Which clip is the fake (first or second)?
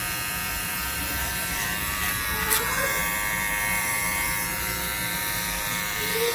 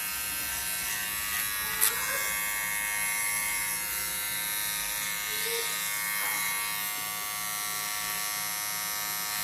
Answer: first